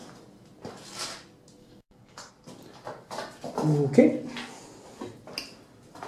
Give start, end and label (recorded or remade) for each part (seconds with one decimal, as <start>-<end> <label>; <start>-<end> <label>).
0.0-1.6 recorded; 1.6-2.3 remade; 2.3-6.1 recorded